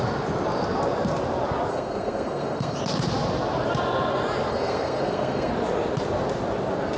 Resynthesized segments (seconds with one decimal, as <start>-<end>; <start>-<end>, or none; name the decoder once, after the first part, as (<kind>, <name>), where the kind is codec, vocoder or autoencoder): 1.7-2.8 (codec, SNAC); 4.5-5.5